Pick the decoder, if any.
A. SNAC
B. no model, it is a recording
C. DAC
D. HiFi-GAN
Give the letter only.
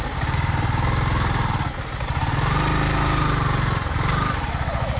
B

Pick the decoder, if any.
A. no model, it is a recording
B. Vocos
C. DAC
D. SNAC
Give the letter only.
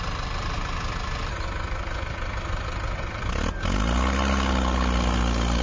A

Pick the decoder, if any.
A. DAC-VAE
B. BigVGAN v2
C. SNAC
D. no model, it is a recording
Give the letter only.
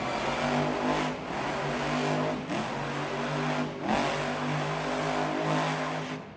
D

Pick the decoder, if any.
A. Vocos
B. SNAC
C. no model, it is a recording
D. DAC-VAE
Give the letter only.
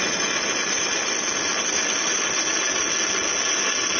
C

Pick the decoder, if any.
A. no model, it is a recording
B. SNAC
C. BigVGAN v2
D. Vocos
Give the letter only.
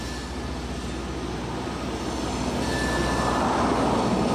A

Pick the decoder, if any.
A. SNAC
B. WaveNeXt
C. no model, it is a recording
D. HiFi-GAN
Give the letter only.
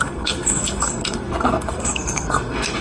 A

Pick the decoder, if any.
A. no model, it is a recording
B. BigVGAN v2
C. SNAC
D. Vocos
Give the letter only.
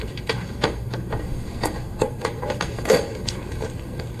C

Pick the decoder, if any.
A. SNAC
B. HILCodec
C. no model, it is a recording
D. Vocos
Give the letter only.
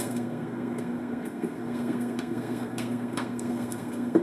A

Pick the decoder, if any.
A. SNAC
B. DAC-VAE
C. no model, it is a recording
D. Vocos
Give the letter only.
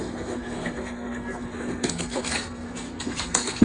A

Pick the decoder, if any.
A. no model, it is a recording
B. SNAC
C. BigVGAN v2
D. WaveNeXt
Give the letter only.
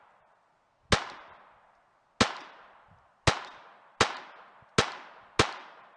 A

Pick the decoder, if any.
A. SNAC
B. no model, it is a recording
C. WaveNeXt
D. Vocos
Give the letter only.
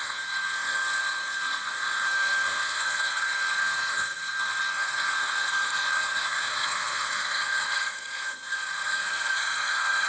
A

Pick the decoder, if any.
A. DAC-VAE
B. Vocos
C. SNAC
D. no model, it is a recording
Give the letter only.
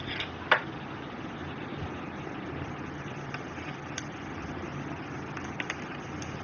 D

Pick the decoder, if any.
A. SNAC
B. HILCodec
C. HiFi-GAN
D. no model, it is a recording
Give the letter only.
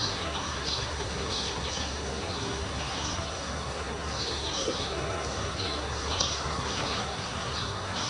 A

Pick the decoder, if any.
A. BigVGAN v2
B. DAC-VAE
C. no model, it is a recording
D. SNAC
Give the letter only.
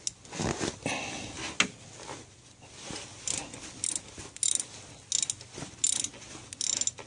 C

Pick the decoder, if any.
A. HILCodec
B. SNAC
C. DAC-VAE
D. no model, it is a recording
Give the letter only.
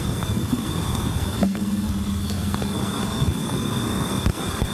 B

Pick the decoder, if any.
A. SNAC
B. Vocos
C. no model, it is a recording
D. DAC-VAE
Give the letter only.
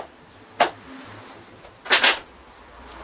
C